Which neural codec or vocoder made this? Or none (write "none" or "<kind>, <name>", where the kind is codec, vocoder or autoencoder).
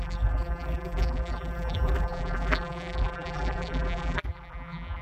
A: vocoder, BigVGAN v2